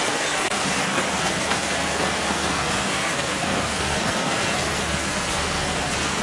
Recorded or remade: remade